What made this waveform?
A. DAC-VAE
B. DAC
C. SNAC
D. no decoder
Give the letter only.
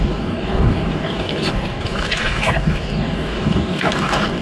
B